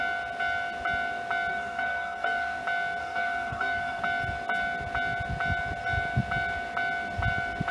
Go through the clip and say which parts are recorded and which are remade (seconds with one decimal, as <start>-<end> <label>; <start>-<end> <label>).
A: 0.0-1.5 recorded; 1.5-2.6 remade; 2.6-3.0 recorded; 3.0-4.0 remade; 4.0-7.7 recorded